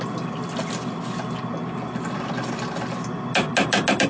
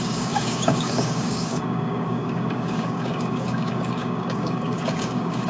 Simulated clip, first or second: second